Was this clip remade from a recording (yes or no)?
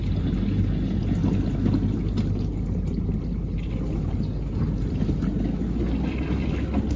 no